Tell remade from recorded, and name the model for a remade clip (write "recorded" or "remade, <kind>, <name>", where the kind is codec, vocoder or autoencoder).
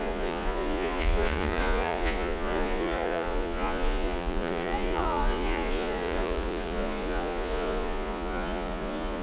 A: remade, vocoder, Vocos